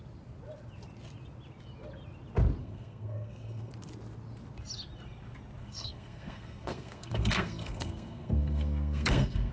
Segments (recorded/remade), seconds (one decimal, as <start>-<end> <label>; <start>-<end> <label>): 0.0-2.6 recorded; 2.6-3.7 remade; 3.7-5.6 recorded; 5.6-9.5 remade